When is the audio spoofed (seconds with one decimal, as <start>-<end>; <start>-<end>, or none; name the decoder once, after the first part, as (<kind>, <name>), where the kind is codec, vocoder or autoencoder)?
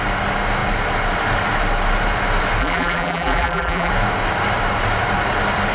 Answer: 2.6-3.9 (vocoder, BigVGAN v2)